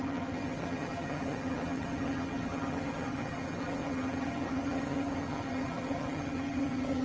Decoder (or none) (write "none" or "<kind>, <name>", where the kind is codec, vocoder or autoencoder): vocoder, HiFi-GAN